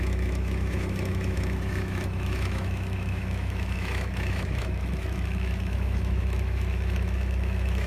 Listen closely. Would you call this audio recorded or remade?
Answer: remade